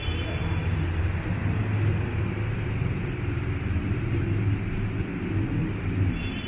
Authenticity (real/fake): real